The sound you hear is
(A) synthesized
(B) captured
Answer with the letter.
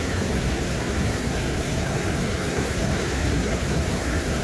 A